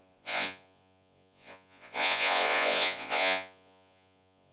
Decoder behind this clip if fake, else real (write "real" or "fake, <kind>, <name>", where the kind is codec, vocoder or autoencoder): fake, vocoder, Vocos